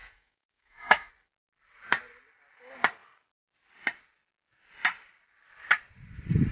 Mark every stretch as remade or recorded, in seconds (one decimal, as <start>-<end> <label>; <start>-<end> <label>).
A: 0.0-1.1 remade; 1.1-6.5 recorded